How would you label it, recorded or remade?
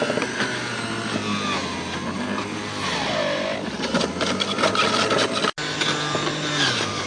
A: recorded